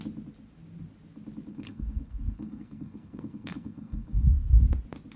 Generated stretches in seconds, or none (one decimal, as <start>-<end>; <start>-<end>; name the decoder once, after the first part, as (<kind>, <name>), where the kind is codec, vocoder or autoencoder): 1.5-4.6 (codec, SNAC)